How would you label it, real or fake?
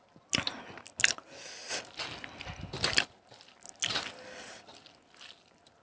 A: real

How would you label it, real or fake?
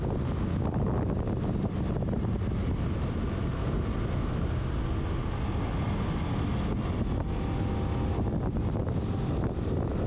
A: real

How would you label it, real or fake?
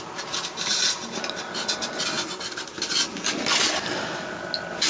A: real